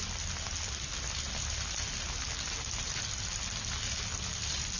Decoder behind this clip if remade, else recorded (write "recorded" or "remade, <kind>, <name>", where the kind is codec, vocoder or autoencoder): recorded